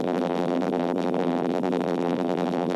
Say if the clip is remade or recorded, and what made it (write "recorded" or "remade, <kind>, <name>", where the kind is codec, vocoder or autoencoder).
remade, vocoder, BigVGAN v2